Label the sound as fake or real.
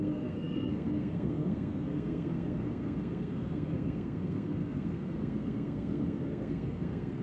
fake